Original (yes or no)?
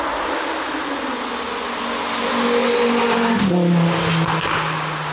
yes